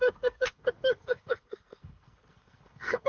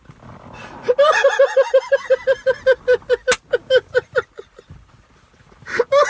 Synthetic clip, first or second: first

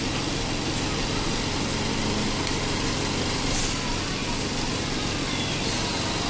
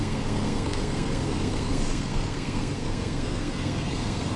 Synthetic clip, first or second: second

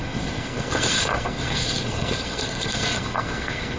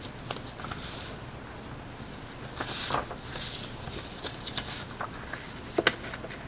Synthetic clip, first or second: first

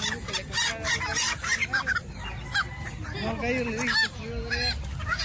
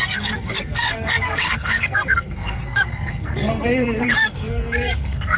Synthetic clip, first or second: second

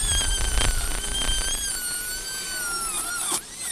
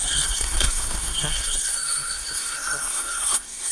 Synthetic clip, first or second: second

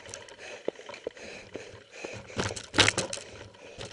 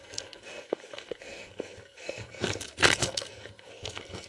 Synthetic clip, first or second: second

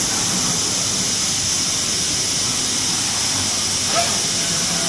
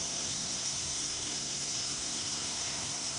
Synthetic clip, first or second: second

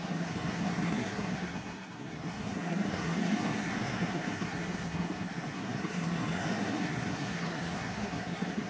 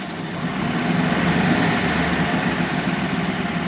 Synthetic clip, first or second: first